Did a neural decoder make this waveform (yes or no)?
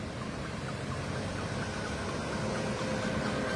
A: no